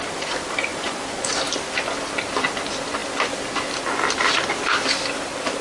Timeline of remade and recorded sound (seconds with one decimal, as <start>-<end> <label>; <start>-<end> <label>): 0.0-0.7 recorded; 0.7-1.3 remade; 1.3-5.6 recorded